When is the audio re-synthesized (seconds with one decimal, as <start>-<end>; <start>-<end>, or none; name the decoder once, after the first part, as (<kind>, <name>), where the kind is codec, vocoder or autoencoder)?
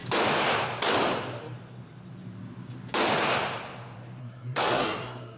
4.2-5.4 (codec, SNAC)